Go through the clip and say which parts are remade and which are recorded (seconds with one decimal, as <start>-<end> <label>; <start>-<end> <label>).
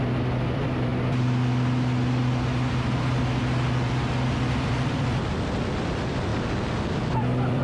0.0-0.9 remade; 0.9-4.4 recorded; 4.4-7.6 remade